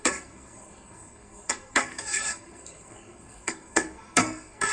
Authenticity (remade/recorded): remade